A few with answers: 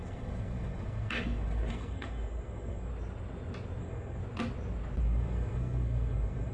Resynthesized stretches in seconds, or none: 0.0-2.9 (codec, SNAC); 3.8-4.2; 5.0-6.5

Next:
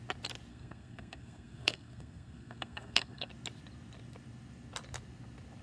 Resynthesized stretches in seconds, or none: 0.5-3.3 (codec, SNAC)